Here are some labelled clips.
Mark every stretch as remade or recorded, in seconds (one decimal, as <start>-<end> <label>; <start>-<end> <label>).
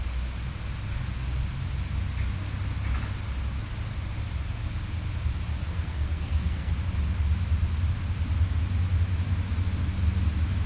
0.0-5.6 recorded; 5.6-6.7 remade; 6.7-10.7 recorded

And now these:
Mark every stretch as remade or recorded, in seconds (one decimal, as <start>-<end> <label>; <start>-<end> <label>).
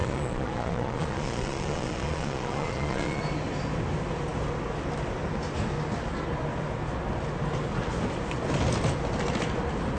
0.0-3.2 remade; 3.2-10.0 recorded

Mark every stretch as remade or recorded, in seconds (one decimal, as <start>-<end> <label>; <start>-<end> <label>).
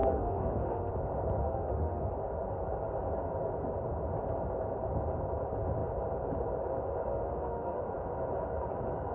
0.0-0.9 remade; 0.9-1.4 recorded; 1.4-2.1 remade; 2.1-7.1 recorded; 7.1-7.8 remade; 7.8-9.1 recorded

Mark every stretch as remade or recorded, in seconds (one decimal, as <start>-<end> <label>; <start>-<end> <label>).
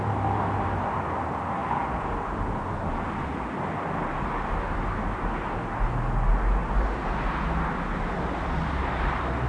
0.0-9.5 recorded